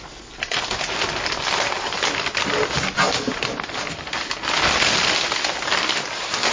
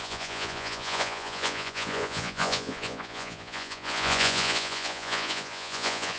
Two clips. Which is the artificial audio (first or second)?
second